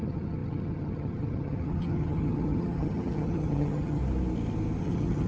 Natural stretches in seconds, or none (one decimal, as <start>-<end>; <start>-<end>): 4.0-4.8